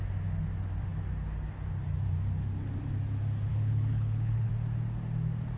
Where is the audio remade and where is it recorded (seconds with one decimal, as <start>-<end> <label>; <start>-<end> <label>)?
0.0-3.5 recorded; 3.5-4.5 remade; 4.5-5.6 recorded